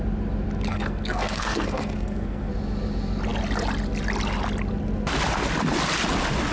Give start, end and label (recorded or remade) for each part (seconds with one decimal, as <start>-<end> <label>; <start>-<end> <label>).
0.0-0.7 recorded; 0.7-2.5 remade; 2.5-6.5 recorded